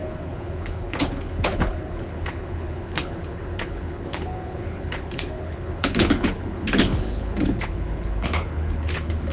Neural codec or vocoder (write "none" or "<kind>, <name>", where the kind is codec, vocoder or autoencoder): codec, HILCodec